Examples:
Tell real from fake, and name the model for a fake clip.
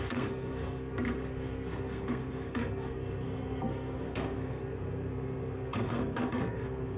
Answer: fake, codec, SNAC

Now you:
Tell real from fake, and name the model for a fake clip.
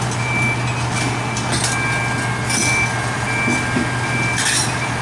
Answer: real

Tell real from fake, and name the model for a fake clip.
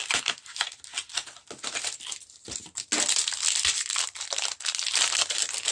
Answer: real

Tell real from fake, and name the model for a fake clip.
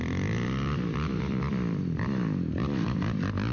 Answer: fake, vocoder, BigVGAN v2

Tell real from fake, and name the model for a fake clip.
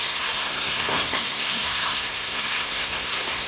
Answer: fake, codec, SNAC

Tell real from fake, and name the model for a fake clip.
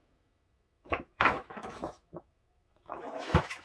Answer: fake, autoencoder, DAC-VAE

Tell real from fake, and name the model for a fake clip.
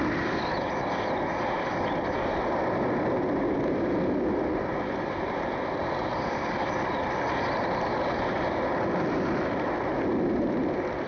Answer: real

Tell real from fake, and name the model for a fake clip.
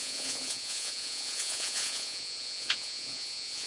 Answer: fake, vocoder, Vocos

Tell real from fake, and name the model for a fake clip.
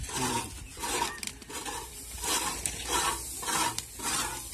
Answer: real